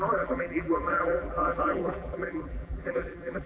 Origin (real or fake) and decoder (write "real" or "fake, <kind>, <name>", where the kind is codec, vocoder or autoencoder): fake, vocoder, BigVGAN v2